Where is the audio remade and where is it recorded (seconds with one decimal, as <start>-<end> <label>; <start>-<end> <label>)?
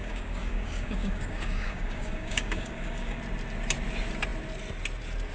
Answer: 0.0-3.2 remade; 3.2-5.3 recorded